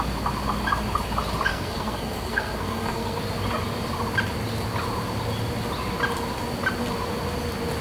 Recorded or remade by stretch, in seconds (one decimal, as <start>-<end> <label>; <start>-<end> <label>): 0.0-1.5 recorded; 1.5-3.2 remade; 3.2-7.8 recorded